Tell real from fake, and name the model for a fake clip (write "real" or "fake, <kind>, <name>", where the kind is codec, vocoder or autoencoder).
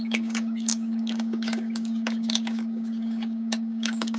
fake, codec, DAC